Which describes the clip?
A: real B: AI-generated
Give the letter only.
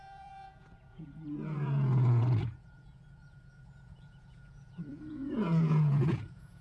B